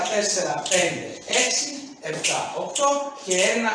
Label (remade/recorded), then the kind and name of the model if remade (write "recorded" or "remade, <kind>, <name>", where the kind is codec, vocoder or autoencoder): remade, vocoder, Vocos